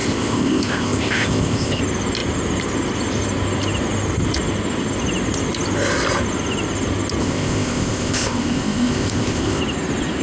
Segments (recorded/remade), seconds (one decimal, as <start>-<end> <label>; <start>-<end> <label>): 0.0-1.8 remade; 1.8-7.2 recorded; 7.2-9.6 remade; 9.6-10.2 recorded